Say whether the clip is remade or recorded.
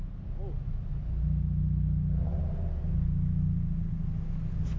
recorded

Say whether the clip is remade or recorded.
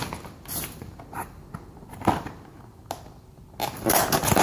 recorded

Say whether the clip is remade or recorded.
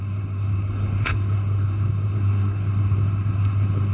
remade